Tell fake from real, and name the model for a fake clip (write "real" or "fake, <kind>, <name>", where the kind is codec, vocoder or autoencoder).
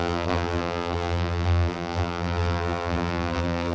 fake, vocoder, BigVGAN v2